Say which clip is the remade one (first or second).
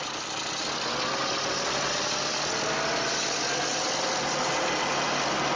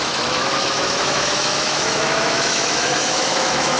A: second